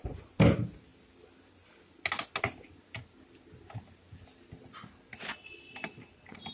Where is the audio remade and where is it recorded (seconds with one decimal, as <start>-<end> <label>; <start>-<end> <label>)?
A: 0.0-6.5 recorded

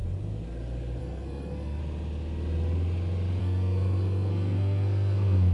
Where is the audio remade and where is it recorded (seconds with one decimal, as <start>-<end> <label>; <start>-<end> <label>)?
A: 0.0-1.0 recorded; 1.0-1.8 remade; 1.8-3.4 recorded; 3.4-5.5 remade

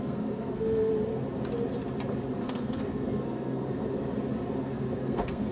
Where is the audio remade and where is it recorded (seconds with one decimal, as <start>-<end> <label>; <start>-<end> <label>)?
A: 0.0-0.9 remade; 0.9-2.3 recorded; 2.3-4.0 remade; 4.0-4.6 recorded; 4.6-5.5 remade

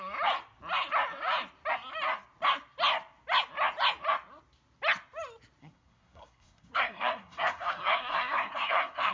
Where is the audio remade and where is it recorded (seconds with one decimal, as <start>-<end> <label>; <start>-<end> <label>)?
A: 0.0-5.6 recorded; 5.6-9.1 remade

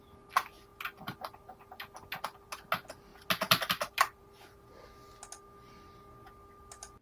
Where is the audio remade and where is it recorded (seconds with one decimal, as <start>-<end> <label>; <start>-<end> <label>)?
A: 0.0-7.0 recorded

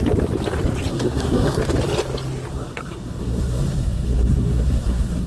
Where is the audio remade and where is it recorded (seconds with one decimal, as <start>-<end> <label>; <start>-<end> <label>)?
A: 0.0-0.9 recorded; 0.9-1.6 remade; 1.6-2.5 recorded; 2.5-5.3 remade